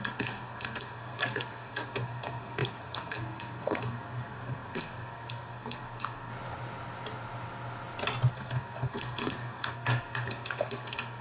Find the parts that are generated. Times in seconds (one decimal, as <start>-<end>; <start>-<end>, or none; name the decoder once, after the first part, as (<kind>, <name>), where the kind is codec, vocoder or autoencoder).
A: 0.0-6.3 (codec, SNAC); 8.3-11.2